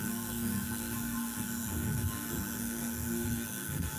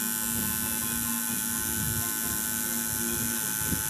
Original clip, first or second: second